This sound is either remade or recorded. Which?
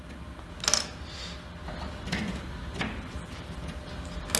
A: recorded